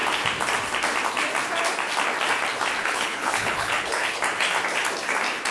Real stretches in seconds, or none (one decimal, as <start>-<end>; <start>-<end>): 0.0-2.8; 4.2-5.5